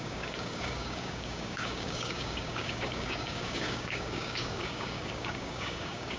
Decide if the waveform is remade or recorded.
remade